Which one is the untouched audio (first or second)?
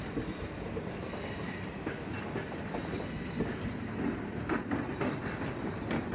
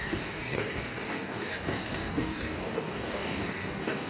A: first